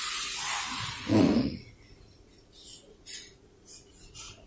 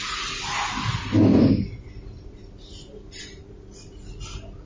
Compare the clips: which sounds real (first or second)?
second